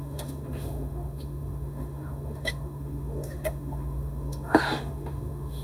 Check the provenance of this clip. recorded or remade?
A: remade